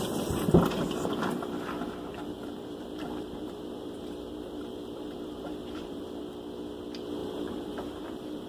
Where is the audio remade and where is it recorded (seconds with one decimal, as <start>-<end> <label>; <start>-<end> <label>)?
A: 0.0-2.1 recorded; 2.1-6.2 remade; 6.2-7.2 recorded; 7.2-8.5 remade